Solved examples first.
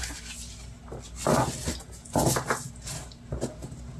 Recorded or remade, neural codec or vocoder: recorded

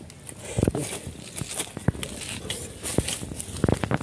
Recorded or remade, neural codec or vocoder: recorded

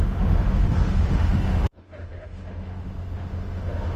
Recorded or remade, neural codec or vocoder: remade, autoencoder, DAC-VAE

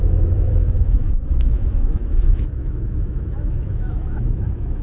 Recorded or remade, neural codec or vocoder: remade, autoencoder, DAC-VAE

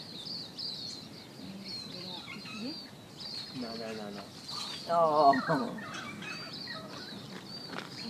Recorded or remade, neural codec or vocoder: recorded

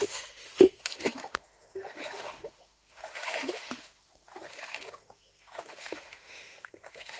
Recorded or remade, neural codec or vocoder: remade, autoencoder, DAC-VAE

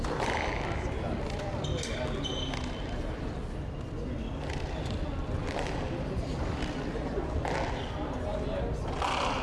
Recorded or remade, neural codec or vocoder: recorded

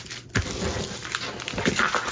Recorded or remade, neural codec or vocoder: recorded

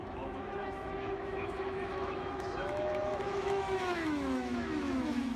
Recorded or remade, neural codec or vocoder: remade, autoencoder, DAC-VAE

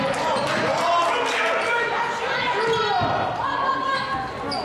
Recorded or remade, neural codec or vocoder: recorded